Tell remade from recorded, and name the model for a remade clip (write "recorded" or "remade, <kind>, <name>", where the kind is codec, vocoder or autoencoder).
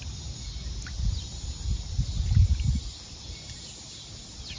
recorded